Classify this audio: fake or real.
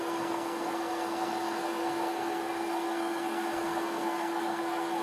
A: fake